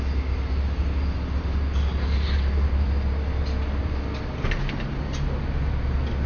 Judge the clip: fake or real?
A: real